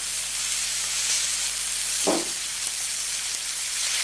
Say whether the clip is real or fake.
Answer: real